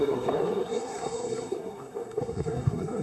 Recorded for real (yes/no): no